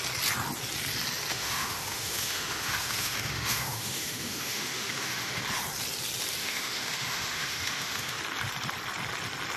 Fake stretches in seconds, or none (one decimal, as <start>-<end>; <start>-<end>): 1.3-5.4; 6.4-8.2